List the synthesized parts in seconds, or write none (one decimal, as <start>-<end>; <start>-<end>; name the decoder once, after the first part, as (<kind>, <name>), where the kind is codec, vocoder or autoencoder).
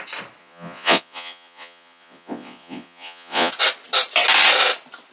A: 0.4-3.5 (vocoder, Vocos)